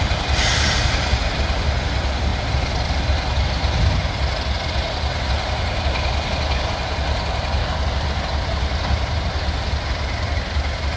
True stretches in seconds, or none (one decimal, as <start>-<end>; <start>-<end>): 0.0-11.0